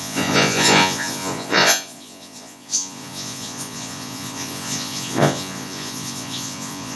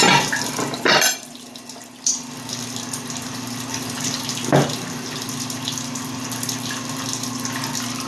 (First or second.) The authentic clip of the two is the second